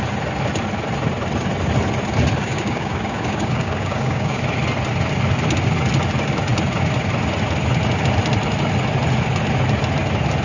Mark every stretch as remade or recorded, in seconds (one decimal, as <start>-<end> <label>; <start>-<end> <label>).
0.0-2.4 recorded; 2.4-4.4 remade; 4.4-10.4 recorded